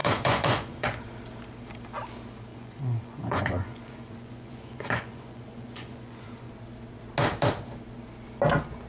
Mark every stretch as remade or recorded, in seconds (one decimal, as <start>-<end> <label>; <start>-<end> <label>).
0.0-1.0 remade; 1.0-2.5 recorded; 2.5-6.5 remade; 6.5-8.9 recorded